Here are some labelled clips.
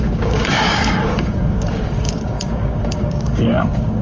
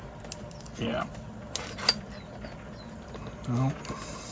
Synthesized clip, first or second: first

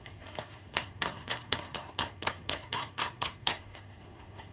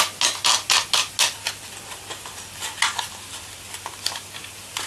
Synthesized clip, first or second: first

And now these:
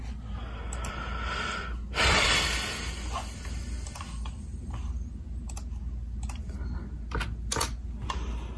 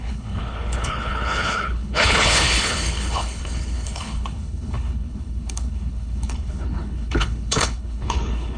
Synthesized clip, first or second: second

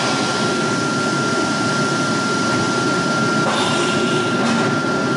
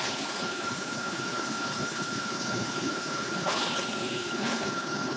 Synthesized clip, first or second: second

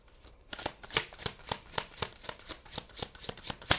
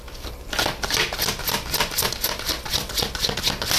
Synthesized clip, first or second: first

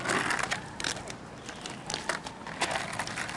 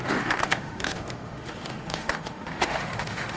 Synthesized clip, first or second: second